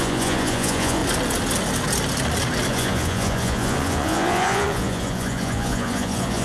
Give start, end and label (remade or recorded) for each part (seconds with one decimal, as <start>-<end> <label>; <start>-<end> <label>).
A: 0.0-1.0 remade; 1.0-2.7 recorded; 2.7-6.4 remade